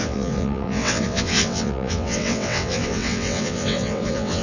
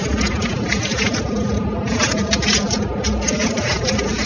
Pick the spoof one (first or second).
first